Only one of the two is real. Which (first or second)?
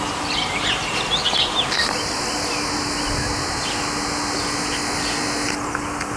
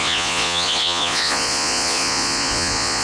first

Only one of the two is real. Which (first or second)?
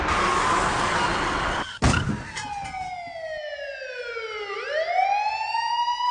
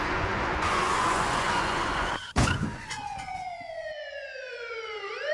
first